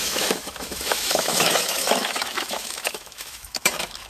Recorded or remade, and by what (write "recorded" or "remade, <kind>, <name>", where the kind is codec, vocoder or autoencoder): remade, autoencoder, DAC-VAE